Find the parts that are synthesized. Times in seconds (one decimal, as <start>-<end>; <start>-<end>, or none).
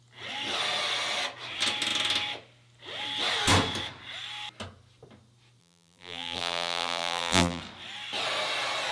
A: 5.6-7.6